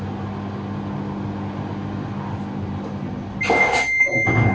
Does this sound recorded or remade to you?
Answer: recorded